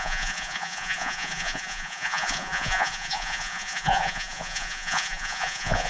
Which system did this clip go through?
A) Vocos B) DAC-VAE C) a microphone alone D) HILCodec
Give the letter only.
A